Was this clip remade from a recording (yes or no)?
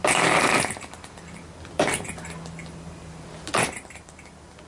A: no